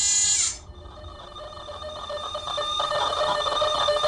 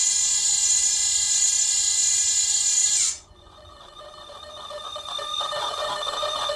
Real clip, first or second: first